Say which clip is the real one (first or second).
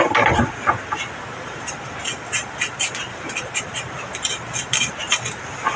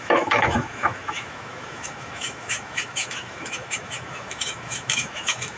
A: first